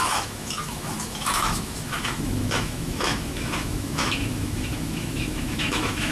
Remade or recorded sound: remade